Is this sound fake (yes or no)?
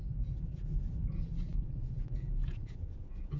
yes